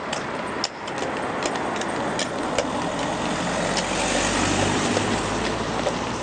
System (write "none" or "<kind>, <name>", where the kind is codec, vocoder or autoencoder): none